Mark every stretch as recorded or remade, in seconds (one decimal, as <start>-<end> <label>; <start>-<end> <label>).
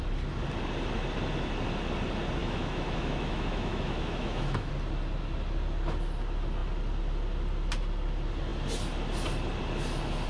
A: 0.0-2.4 recorded; 2.4-4.7 remade; 4.7-10.3 recorded